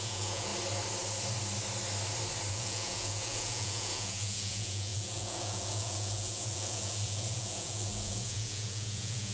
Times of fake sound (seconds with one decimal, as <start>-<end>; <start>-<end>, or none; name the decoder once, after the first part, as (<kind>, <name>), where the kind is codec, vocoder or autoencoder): 0.0-0.5 (vocoder, Vocos); 2.5-9.3